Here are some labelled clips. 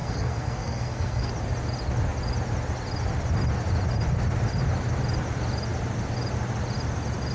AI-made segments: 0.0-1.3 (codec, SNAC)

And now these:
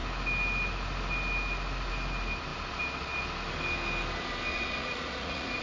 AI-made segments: 4.5-5.6 (vocoder, Vocos)

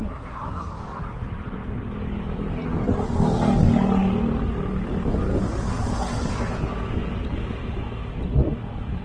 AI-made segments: 0.0-0.7 (codec, SNAC)